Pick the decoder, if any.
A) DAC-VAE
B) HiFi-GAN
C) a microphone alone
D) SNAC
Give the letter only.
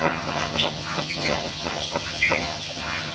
B